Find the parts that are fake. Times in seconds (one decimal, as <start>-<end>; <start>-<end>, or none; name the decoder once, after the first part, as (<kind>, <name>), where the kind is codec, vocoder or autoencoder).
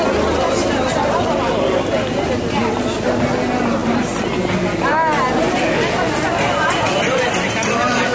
none